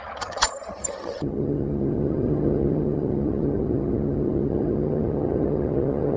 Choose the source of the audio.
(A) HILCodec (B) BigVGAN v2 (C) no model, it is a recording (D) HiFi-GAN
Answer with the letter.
D